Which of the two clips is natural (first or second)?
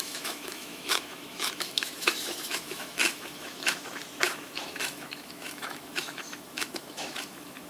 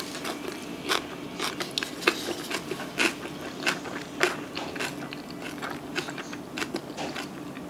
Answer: second